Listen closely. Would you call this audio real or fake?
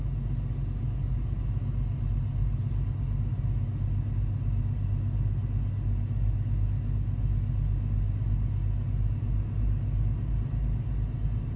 real